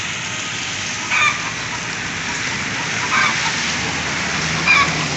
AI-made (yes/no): no